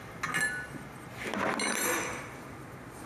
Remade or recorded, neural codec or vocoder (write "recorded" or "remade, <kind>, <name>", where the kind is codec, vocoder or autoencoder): recorded